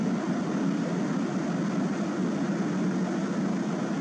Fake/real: real